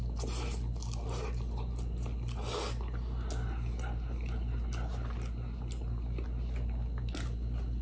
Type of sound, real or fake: real